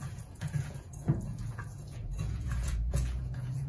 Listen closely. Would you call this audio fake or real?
fake